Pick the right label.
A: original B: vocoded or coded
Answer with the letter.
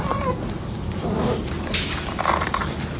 A